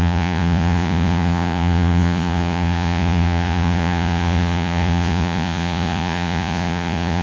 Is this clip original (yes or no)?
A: no